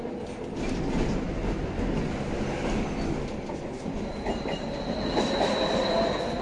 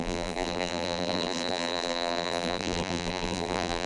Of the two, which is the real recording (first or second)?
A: first